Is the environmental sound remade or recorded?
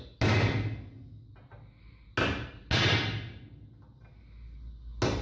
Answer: recorded